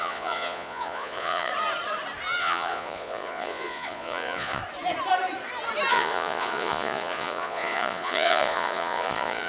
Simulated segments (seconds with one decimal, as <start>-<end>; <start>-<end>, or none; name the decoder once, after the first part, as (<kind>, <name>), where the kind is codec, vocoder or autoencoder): 0.0-1.5 (vocoder, Vocos); 2.4-4.6; 5.9-9.5

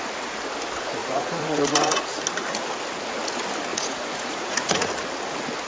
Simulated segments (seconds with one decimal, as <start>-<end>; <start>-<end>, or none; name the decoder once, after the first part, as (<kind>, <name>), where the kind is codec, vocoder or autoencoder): 1.0-2.2 (vocoder, Vocos); 3.7-4.9

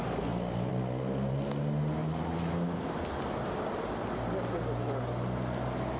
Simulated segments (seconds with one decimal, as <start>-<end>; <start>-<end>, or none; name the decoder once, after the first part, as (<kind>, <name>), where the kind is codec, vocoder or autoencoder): none

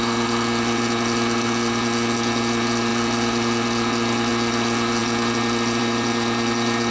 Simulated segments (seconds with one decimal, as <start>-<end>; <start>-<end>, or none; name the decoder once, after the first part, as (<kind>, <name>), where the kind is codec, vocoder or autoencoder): none

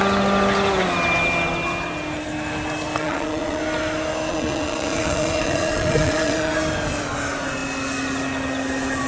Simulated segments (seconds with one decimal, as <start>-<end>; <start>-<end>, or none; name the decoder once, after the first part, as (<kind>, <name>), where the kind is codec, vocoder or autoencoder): 3.0-3.6 (vocoder, Vocos); 4.3-6.5

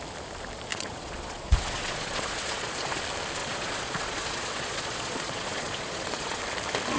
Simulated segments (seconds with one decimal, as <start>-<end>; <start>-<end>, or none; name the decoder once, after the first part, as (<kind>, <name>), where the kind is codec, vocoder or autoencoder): 0.7-3.0 (vocoder, Vocos); 3.4-6.4

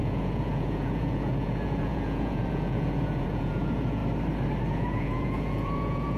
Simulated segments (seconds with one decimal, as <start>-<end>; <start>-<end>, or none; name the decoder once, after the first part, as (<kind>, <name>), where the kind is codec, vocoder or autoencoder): 0.0-4.0 (vocoder, Vocos); 4.7-6.2

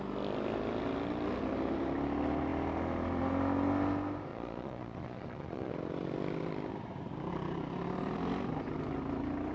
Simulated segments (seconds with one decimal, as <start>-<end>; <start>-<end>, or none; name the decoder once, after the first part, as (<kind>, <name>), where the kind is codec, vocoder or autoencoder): 4.3-5.7 (vocoder, Vocos)